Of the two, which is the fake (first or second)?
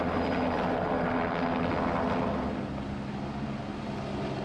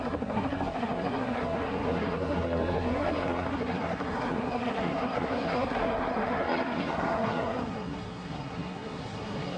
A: second